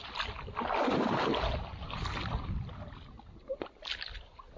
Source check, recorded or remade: recorded